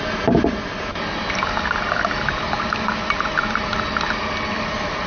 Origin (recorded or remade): recorded